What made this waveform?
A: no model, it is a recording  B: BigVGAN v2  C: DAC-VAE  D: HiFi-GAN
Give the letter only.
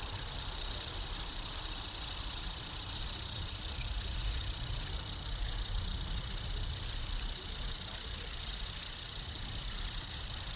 B